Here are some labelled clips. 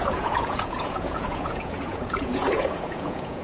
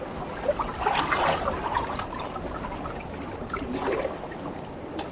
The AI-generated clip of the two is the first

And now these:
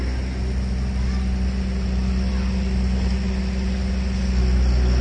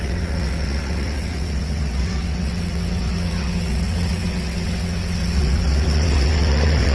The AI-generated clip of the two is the second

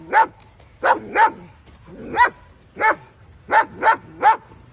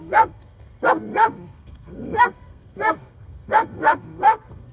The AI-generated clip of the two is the second